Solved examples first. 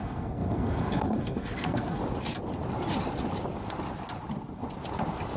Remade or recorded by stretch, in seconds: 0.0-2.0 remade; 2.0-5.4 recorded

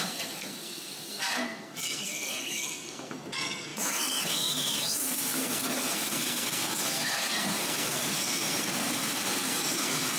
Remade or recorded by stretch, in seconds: 0.0-10.2 remade

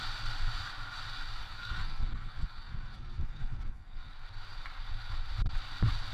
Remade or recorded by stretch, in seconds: 0.0-1.4 recorded; 1.4-4.1 remade; 4.1-6.1 recorded

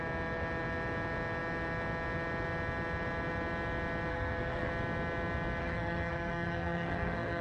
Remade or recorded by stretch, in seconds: 0.0-4.1 recorded; 4.1-4.7 remade; 4.7-5.6 recorded; 5.6-7.4 remade